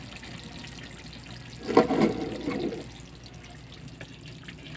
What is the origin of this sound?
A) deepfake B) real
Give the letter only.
B